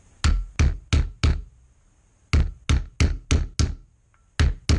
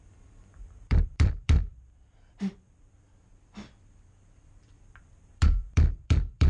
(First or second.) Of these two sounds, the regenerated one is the second